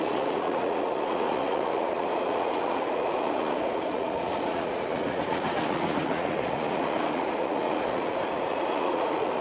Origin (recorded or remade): remade